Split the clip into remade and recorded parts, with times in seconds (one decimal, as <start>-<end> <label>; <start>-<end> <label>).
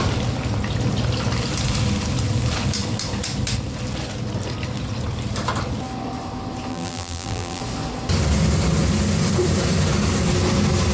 0.0-6.7 recorded; 6.7-7.6 remade; 7.6-10.9 recorded